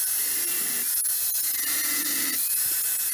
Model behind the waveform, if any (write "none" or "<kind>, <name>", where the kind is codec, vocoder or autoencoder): none